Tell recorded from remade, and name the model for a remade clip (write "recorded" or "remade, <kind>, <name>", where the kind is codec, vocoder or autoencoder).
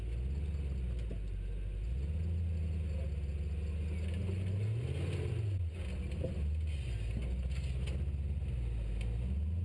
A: recorded